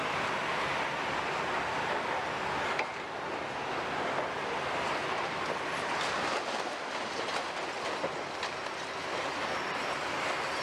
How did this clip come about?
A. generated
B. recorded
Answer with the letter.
B